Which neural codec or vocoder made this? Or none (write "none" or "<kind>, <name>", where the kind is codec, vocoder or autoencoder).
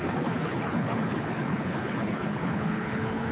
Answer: codec, HILCodec